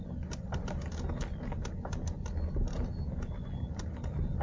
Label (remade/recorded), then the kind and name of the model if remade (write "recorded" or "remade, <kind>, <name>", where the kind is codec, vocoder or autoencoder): recorded